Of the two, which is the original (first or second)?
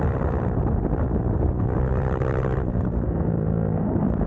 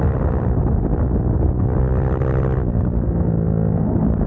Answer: second